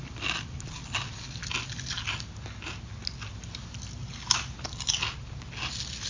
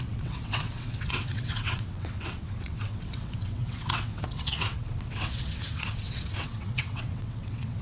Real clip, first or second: first